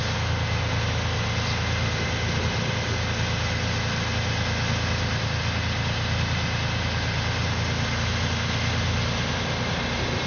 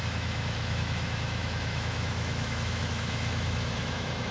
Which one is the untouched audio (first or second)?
first